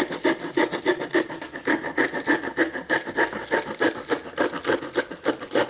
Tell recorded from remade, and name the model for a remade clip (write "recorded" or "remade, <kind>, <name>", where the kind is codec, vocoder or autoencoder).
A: recorded